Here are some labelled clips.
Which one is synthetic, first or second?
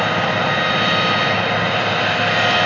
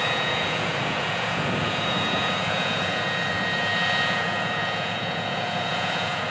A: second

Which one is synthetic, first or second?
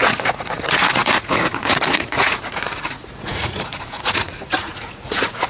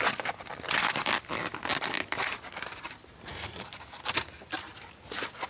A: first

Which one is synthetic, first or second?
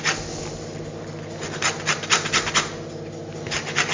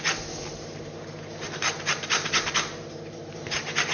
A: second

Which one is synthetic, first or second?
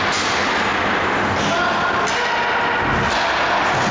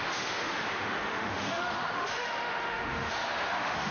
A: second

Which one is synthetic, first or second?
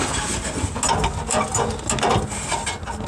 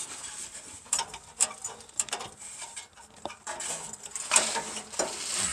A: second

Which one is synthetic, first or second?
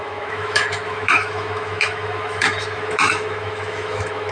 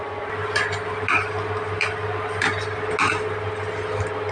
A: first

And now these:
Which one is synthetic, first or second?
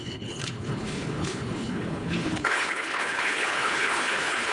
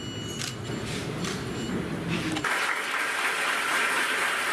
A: first